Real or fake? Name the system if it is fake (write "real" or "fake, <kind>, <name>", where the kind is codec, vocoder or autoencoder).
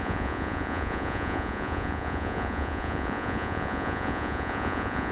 fake, vocoder, Vocos